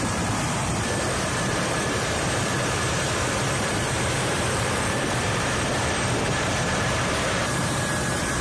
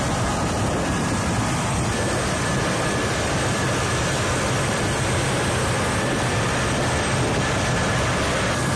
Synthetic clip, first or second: first